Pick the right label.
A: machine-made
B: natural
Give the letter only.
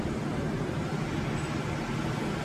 B